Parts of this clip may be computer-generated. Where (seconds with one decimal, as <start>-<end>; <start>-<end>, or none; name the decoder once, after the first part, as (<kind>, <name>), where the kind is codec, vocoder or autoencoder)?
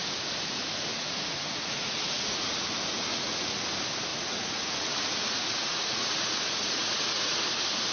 0.9-2.7 (vocoder, Vocos); 3.1-3.6; 4.1-7.4